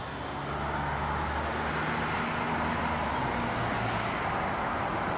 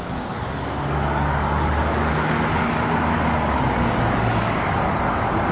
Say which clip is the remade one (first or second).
second